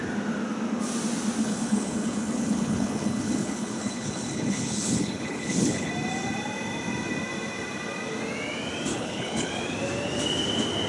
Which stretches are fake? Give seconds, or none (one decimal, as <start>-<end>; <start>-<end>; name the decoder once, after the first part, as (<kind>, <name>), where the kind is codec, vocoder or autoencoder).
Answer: 1.4-5.9 (codec, HILCodec); 8.9-9.5